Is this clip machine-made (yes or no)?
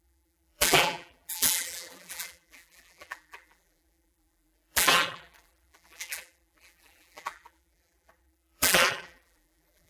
yes